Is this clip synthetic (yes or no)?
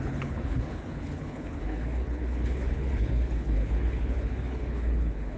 yes